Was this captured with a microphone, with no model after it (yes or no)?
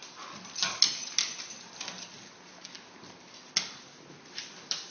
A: yes